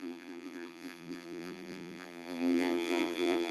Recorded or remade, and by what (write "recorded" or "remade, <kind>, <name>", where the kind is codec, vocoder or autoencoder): remade, vocoder, BigVGAN v2